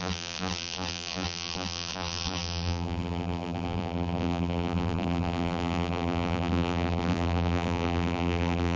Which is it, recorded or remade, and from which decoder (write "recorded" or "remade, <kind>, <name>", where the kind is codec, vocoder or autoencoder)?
remade, vocoder, BigVGAN v2